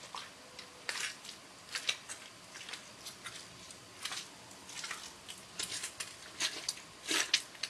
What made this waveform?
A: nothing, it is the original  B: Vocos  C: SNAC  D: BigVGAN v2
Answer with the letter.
A